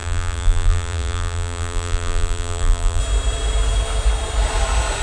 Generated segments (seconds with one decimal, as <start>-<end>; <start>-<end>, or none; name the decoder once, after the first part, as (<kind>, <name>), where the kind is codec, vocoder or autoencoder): 0.0-3.0 (vocoder, BigVGAN v2)